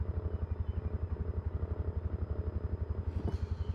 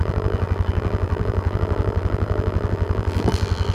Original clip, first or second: first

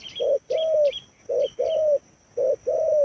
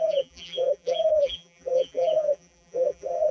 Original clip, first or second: first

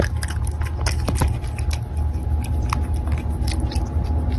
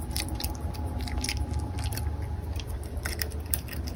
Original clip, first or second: first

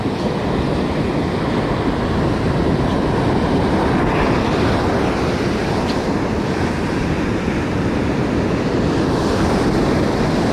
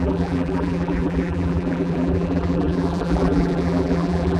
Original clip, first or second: first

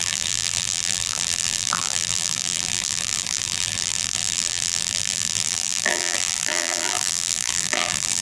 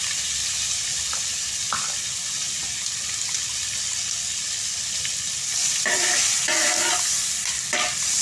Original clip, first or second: second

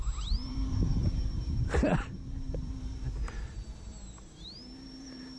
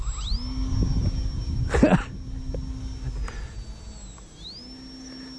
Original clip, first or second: second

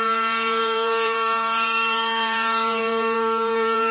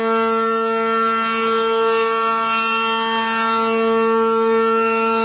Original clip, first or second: second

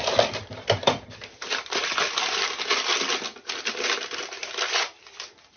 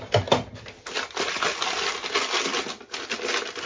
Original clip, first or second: second